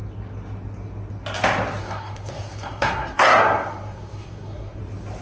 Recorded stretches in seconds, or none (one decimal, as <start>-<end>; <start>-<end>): 0.0-1.8; 4.8-5.2